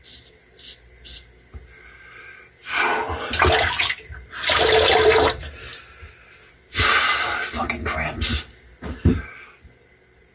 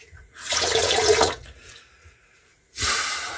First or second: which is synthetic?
second